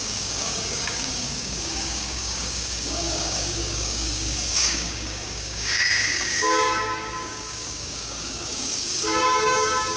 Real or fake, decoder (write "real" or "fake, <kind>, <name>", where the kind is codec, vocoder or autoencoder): fake, codec, DAC